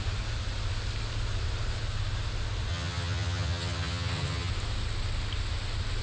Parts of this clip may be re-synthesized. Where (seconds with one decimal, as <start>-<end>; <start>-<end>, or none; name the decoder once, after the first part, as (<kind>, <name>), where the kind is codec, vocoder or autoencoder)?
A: 2.7-4.5 (vocoder, HiFi-GAN)